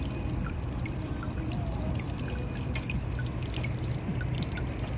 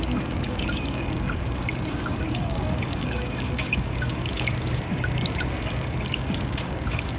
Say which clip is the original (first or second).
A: first